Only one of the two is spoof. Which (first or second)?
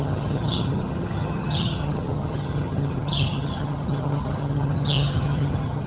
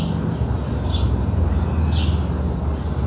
first